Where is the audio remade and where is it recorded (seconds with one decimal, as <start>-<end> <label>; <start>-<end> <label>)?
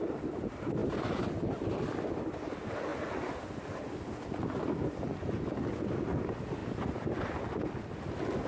0.0-8.5 recorded